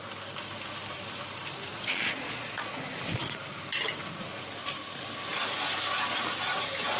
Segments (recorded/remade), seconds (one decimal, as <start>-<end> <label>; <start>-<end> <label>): 0.0-1.7 recorded; 1.7-2.8 remade; 2.8-7.0 recorded